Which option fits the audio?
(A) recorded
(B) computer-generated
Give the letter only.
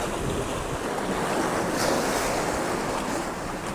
A